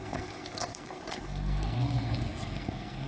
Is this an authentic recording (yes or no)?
no